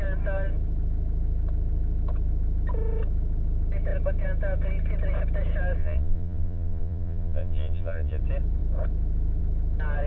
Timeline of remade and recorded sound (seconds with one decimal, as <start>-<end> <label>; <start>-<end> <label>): 0.0-5.8 recorded; 5.8-8.2 remade; 8.2-10.1 recorded